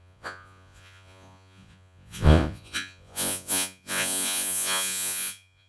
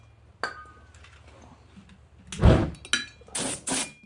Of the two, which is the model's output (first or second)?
first